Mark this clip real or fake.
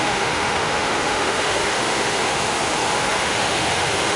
fake